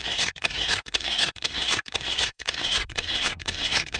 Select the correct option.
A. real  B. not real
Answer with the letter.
B